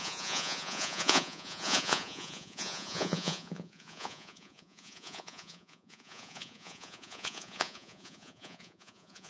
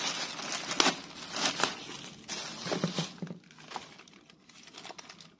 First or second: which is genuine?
second